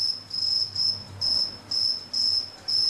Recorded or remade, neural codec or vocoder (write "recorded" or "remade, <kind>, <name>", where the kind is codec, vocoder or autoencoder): recorded